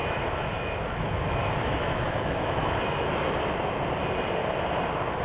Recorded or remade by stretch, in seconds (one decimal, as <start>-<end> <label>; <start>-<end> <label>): 0.0-3.1 remade; 3.1-5.2 recorded